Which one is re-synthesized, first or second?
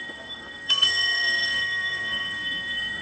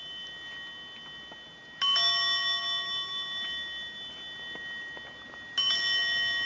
first